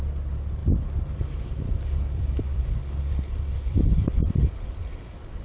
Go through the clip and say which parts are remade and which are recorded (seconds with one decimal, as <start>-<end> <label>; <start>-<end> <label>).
0.0-5.4 recorded